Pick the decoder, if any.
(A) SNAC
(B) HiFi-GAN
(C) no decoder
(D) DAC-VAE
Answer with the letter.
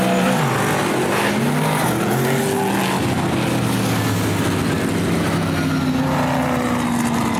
C